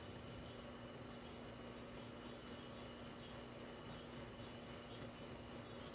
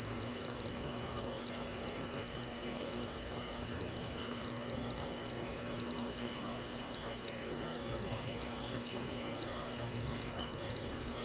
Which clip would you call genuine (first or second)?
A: first